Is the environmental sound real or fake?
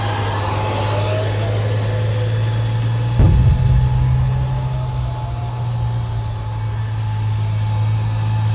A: real